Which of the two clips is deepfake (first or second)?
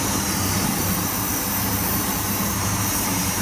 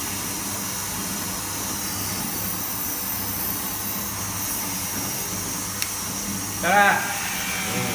first